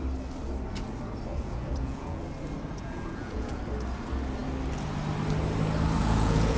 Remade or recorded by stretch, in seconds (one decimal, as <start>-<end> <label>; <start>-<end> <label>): 0.0-1.3 recorded; 1.3-2.2 remade; 2.2-2.7 recorded; 2.7-3.6 remade; 3.6-6.0 recorded; 6.0-6.6 remade